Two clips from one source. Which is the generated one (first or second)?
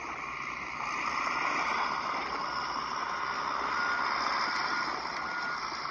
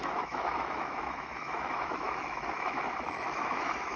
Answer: second